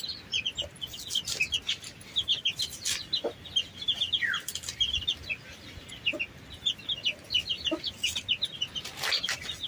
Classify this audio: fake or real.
real